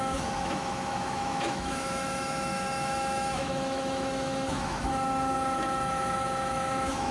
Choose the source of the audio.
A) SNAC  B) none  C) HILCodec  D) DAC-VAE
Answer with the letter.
D